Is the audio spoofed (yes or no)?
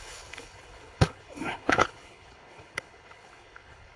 yes